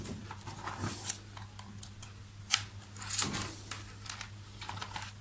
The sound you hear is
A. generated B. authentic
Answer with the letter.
A